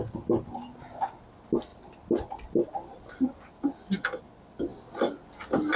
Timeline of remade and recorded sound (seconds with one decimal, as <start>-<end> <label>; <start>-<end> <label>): 0.0-5.8 recorded